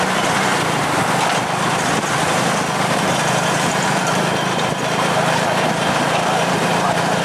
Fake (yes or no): yes